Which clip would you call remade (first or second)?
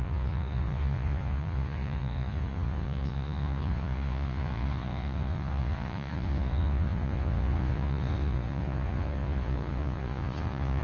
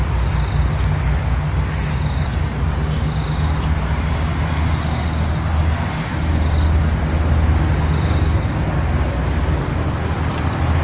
first